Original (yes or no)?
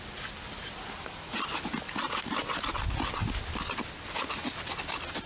yes